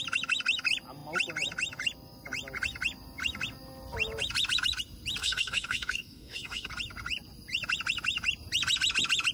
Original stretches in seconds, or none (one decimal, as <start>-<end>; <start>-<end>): 0.0-5.2; 6.7-9.3